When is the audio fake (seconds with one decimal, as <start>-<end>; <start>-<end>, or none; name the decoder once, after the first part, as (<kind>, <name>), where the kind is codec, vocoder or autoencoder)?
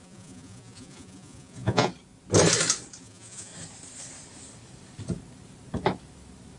0.0-1.9 (vocoder, Vocos); 3.0-3.5